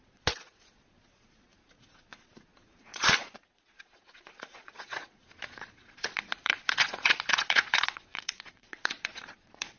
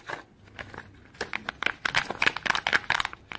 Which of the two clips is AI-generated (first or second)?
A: first